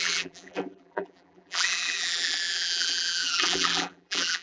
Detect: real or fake fake